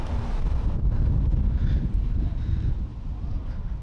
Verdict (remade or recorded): recorded